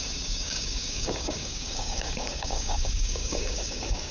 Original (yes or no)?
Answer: no